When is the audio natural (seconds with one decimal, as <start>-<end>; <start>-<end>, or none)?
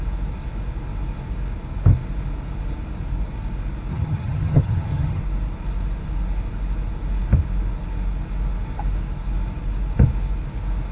0.0-3.9; 5.2-10.9